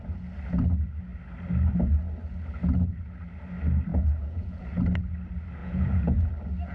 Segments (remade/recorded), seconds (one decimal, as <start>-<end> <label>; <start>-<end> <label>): 0.0-3.9 recorded; 3.9-4.7 remade; 4.7-5.6 recorded; 5.6-6.3 remade; 6.3-6.7 recorded